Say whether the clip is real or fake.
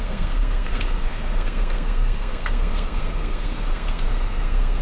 fake